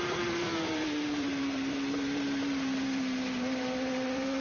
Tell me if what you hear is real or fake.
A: fake